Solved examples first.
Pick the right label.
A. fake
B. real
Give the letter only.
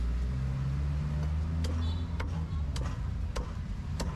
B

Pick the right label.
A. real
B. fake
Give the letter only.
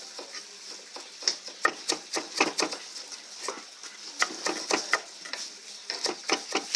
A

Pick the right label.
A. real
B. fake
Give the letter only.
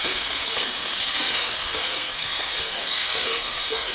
B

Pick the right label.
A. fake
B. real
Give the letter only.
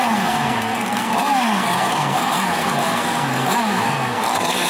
A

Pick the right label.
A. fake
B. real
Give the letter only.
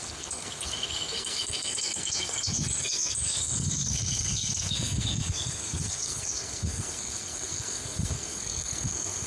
A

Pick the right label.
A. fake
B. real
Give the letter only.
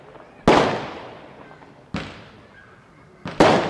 B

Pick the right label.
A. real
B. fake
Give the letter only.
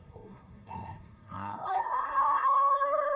B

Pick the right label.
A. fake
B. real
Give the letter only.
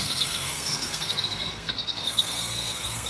A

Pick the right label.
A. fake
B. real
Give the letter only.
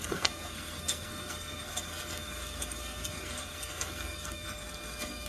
A